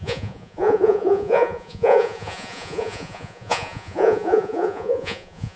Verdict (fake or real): fake